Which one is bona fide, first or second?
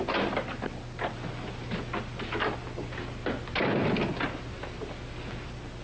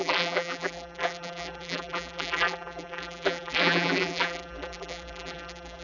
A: first